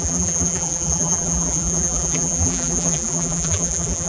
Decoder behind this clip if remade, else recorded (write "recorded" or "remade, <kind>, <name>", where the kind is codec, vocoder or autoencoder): remade, vocoder, BigVGAN v2